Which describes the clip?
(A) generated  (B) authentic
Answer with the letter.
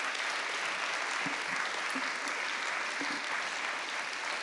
B